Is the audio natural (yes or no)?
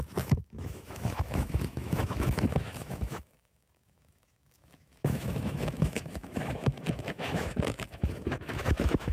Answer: no